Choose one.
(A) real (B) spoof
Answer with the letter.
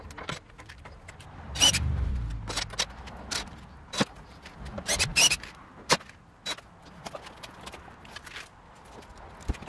A